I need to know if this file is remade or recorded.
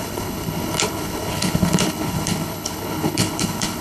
remade